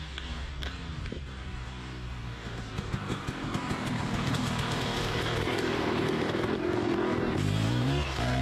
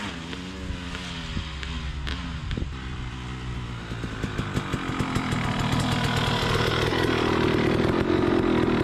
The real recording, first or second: second